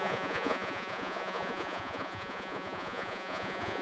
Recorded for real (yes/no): no